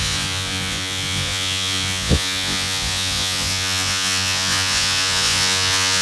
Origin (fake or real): fake